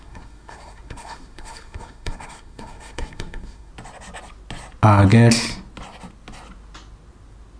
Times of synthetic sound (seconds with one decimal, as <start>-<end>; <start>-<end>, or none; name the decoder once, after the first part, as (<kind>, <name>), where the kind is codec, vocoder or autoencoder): 0.0-3.7 (codec, SNAC)